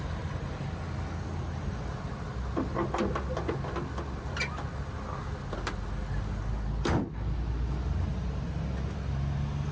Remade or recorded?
recorded